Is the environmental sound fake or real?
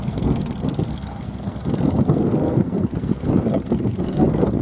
fake